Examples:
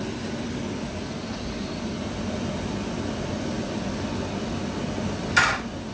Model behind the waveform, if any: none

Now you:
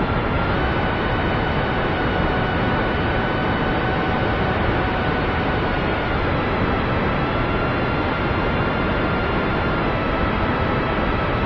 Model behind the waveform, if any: none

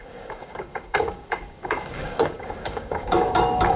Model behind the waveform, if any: codec, DAC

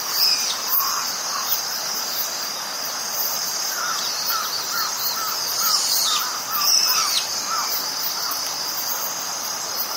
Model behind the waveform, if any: none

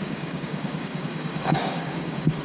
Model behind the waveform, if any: codec, DAC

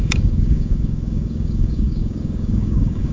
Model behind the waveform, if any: codec, DAC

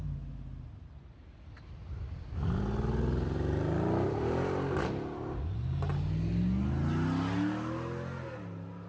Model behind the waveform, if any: none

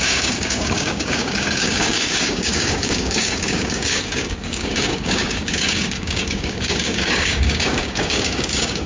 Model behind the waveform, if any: codec, DAC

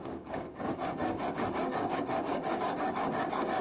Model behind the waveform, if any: codec, DAC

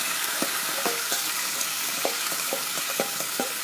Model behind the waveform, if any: codec, DAC